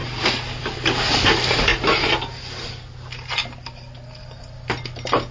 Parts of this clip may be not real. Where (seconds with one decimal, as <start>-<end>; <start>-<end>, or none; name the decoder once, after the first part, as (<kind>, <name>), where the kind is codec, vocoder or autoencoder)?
none